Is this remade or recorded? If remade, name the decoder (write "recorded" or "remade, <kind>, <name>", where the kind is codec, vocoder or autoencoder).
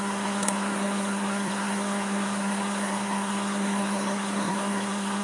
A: remade, codec, SNAC